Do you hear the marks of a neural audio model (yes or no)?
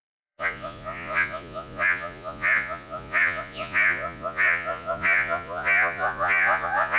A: yes